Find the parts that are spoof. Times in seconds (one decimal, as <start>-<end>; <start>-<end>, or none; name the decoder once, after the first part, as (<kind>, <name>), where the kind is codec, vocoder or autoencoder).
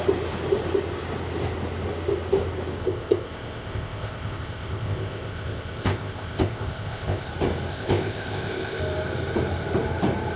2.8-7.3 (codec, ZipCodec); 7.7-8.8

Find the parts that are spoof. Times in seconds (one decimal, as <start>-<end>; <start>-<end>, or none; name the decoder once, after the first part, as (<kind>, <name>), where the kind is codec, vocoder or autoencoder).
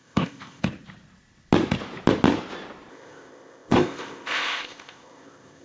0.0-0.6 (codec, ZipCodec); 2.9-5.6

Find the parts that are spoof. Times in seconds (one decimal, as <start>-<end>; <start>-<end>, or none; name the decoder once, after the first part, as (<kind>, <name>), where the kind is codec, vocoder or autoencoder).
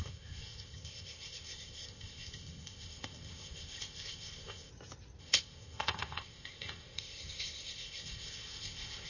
0.0-4.7 (codec, ZipCodec); 5.2-9.1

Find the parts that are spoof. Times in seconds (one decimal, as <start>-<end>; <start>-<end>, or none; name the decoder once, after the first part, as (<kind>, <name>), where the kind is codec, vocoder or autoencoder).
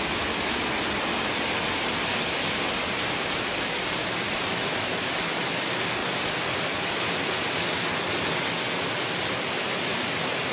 none